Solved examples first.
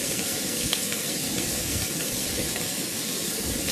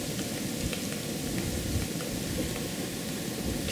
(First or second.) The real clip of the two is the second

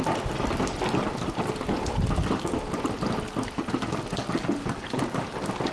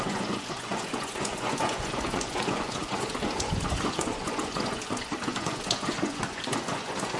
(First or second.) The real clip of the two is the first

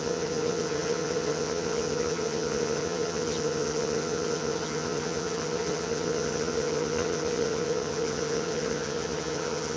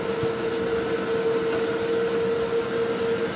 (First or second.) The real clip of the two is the second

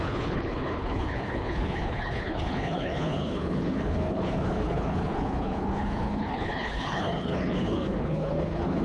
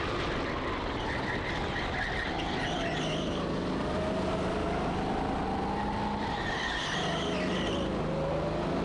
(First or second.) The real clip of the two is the second